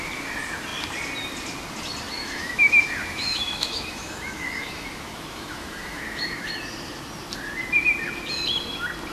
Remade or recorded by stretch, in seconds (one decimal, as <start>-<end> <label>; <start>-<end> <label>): 0.0-2.2 recorded; 2.2-6.5 remade; 6.5-9.1 recorded